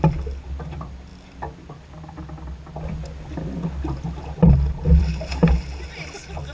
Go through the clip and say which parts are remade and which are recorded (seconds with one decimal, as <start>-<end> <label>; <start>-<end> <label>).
0.0-6.5 recorded